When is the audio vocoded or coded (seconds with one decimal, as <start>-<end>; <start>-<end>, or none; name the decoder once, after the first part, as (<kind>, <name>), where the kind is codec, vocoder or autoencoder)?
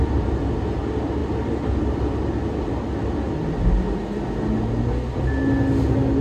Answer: none